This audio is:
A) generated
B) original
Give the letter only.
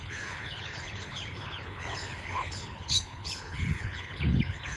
A